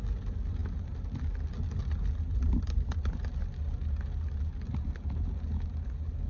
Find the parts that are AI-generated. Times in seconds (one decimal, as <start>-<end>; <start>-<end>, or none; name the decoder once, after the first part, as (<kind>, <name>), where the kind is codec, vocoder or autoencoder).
none